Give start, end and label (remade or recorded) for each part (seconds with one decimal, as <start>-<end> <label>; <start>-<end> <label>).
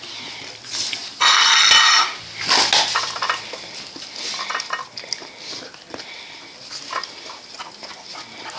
0.0-8.6 recorded